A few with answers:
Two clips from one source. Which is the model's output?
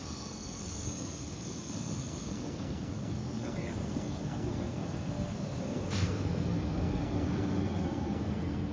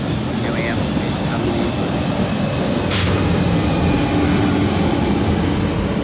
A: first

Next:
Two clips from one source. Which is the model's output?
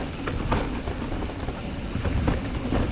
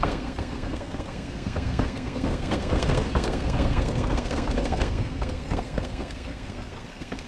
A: second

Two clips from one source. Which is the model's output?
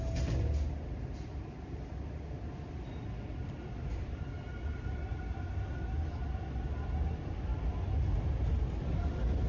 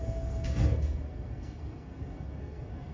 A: second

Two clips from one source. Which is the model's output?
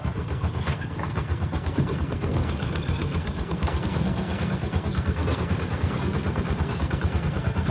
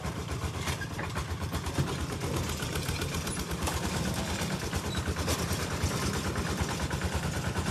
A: first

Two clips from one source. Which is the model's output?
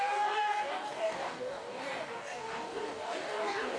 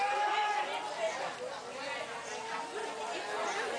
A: first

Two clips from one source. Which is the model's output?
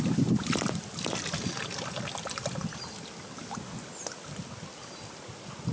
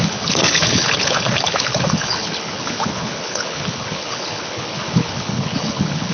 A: second